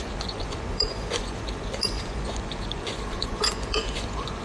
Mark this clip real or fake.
fake